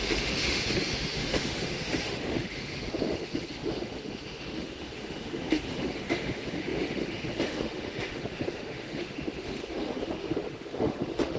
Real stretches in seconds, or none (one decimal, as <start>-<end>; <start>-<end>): none